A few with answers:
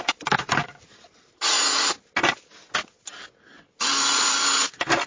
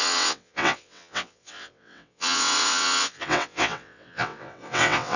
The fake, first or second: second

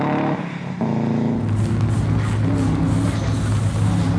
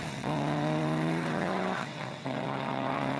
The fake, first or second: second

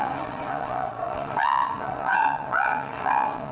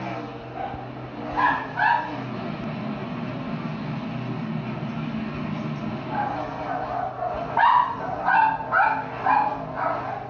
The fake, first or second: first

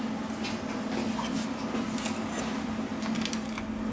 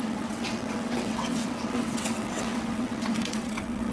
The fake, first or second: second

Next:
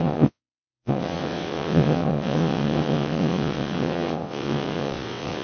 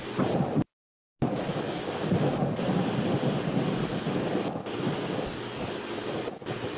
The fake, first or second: first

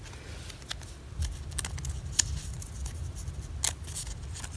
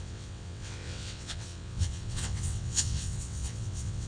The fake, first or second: second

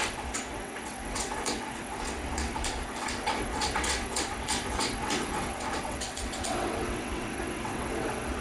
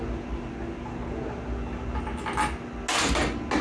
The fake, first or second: first